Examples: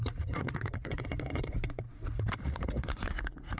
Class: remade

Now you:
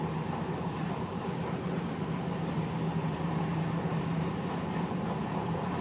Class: recorded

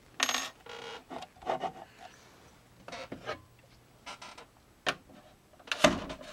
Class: recorded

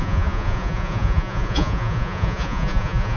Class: remade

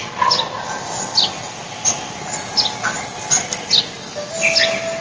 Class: recorded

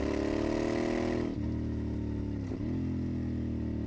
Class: recorded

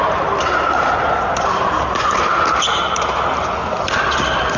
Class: recorded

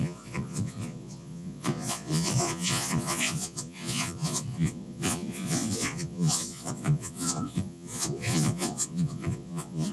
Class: remade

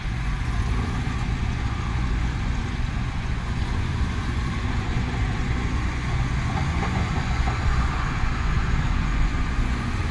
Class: remade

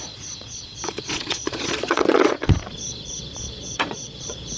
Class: remade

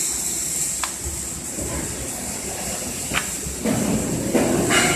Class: recorded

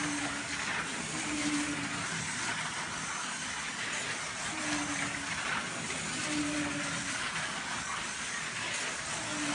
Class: recorded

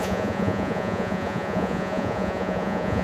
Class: remade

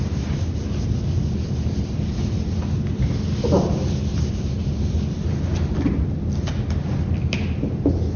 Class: recorded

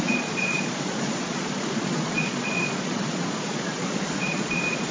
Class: remade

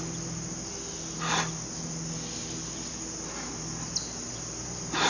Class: recorded